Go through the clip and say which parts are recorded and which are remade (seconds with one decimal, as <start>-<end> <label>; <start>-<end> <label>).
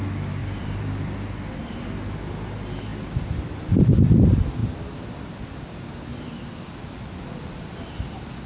0.0-0.4 recorded; 0.4-2.3 remade; 2.3-4.6 recorded; 4.6-6.6 remade; 6.6-8.5 recorded